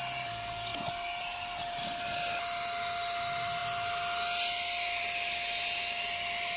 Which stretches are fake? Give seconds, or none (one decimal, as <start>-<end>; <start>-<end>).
none